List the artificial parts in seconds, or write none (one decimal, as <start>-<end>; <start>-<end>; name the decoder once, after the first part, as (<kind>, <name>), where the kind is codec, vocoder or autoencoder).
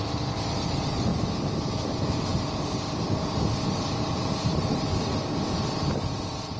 0.0-1.1 (vocoder, BigVGAN v2); 1.7-2.3; 3.6-4.9; 6.0-6.6